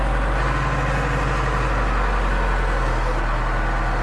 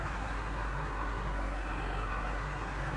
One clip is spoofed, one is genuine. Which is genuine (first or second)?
first